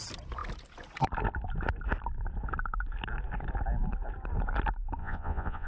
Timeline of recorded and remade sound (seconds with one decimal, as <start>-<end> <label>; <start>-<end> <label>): 0.0-5.0 recorded; 5.0-5.7 remade